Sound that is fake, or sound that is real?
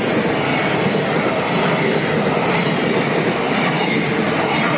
real